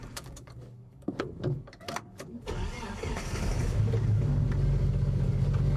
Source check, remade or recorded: remade